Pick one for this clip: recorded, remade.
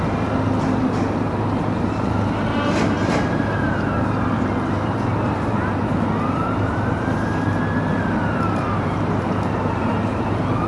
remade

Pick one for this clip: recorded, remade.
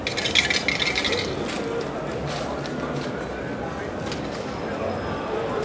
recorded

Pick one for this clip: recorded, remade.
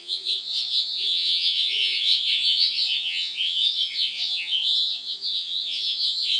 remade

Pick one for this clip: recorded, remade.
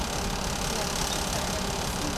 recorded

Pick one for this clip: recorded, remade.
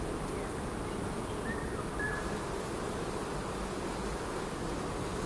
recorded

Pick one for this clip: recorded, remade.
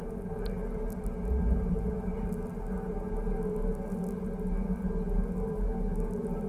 recorded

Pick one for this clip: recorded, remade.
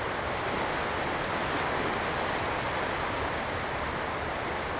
recorded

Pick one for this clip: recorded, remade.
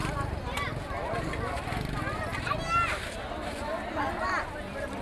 recorded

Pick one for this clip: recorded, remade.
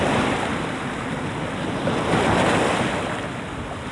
recorded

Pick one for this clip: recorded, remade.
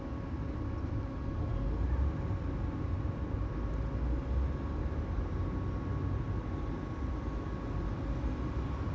recorded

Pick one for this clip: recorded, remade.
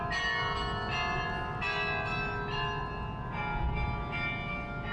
recorded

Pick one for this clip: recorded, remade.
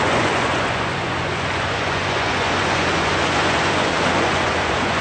remade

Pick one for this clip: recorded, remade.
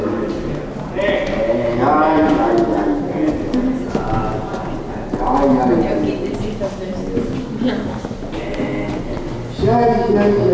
recorded